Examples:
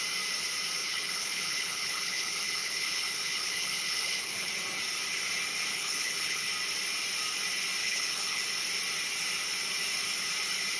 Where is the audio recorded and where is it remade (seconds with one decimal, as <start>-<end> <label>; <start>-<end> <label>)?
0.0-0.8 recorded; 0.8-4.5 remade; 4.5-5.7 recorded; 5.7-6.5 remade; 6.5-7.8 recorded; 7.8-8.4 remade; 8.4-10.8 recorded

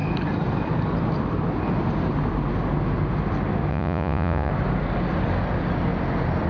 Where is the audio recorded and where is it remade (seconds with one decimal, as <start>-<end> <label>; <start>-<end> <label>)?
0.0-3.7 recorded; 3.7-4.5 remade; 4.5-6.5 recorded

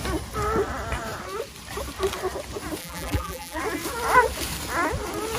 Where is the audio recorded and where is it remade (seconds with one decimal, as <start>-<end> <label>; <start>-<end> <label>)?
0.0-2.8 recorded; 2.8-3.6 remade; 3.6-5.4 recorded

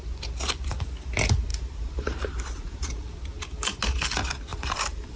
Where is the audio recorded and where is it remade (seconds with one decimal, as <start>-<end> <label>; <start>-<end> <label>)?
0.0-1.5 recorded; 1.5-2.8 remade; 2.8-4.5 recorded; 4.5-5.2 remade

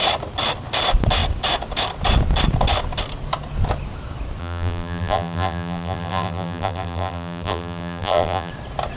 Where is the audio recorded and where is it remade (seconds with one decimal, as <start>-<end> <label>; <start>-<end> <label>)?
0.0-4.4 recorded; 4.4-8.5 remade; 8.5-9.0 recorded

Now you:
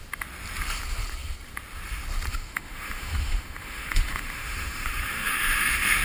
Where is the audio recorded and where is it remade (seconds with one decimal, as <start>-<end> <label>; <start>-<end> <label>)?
0.0-2.3 recorded; 2.3-6.0 remade

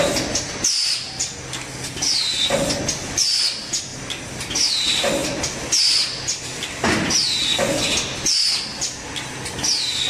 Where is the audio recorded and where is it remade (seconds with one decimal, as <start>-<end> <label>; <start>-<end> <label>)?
0.0-10.1 recorded

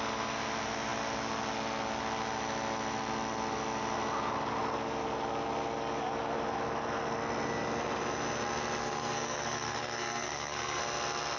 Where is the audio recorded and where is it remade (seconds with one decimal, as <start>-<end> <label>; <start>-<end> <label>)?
0.0-8.8 recorded; 8.8-10.8 remade; 10.8-11.4 recorded